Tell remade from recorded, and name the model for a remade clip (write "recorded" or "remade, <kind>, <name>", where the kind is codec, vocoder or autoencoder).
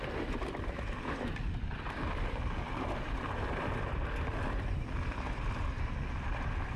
recorded